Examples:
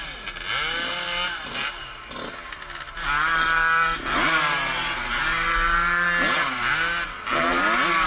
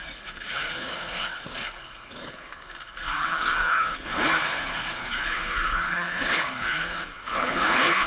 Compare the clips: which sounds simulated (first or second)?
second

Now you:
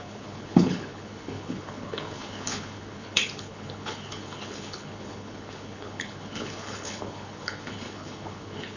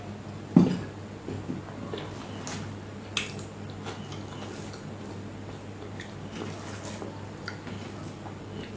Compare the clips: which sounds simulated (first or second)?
first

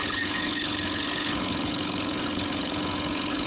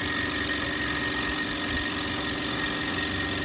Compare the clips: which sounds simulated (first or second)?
first